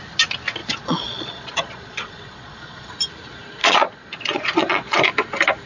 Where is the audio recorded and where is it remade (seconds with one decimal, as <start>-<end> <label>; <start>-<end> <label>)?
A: 0.0-0.6 recorded; 0.6-2.9 remade; 2.9-3.6 recorded; 3.6-5.1 remade; 5.1-5.7 recorded